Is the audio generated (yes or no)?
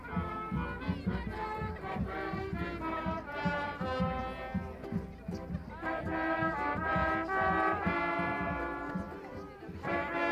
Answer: no